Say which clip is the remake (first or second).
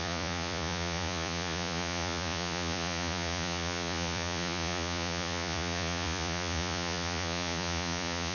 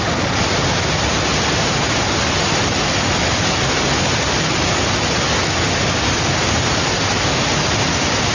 first